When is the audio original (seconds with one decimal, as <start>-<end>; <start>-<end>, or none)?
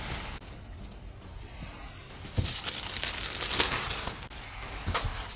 0.0-5.4